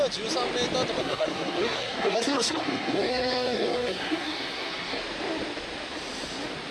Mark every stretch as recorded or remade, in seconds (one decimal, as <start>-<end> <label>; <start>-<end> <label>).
0.0-1.0 recorded; 1.0-5.0 remade; 5.0-6.7 recorded